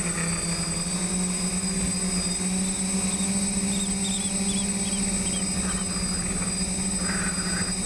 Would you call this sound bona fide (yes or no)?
yes